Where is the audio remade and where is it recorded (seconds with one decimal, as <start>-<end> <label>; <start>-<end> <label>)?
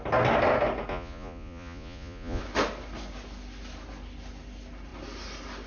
0.0-0.9 recorded; 0.9-2.4 remade; 2.4-5.7 recorded